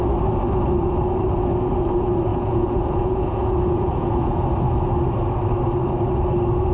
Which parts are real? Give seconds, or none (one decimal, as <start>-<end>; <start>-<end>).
0.0-2.3; 4.4-6.7